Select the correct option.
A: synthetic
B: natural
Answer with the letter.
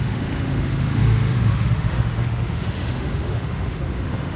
A